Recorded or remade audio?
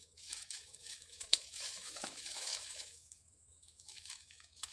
remade